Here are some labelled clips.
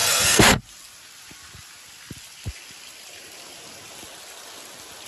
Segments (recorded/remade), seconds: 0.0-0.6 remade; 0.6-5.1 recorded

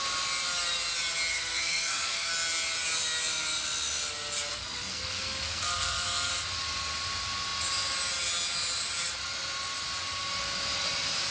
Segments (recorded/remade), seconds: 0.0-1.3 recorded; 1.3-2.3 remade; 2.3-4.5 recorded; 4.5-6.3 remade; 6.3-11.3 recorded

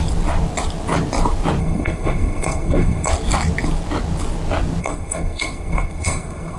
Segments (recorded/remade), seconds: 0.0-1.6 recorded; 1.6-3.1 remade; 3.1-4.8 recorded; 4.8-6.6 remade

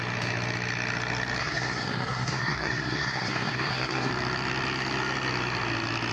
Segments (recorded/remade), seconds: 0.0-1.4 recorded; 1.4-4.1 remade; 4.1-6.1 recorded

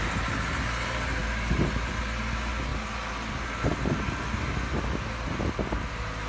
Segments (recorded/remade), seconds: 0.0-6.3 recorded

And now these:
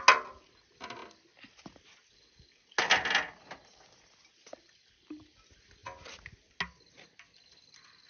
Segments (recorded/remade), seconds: 0.0-8.1 recorded